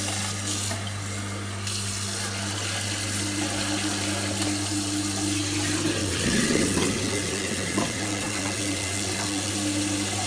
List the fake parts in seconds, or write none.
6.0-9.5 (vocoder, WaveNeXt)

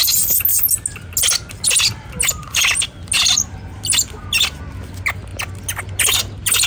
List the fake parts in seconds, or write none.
none

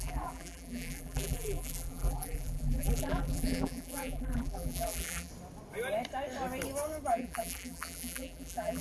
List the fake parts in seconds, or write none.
0.0-5.3 (vocoder, BigVGAN v2); 7.1-8.8

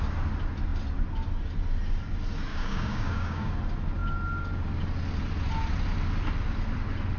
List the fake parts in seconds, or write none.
2.5-3.5 (codec, DAC)

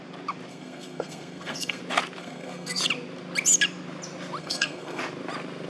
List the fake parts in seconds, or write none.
0.5-1.8 (codec, SNAC); 2.2-2.8; 4.4-5.0